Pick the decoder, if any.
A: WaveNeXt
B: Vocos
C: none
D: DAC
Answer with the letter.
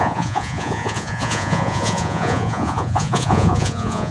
B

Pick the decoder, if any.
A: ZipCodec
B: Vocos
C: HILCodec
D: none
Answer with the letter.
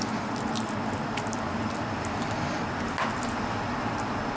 D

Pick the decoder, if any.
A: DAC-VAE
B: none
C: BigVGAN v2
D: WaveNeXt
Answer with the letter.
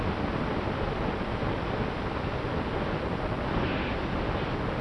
B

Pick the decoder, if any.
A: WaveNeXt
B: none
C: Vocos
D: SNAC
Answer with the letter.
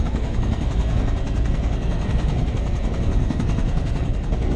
D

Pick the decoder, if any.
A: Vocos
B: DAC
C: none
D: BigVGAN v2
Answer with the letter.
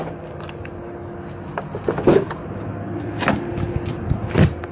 C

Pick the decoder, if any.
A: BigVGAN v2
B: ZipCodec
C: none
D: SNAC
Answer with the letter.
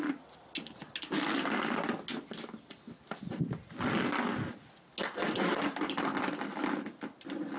C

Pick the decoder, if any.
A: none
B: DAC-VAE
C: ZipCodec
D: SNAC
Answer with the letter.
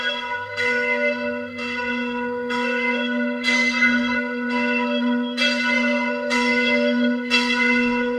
D